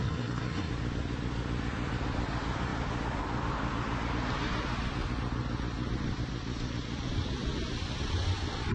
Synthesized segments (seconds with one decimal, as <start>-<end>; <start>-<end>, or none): 0.0-0.7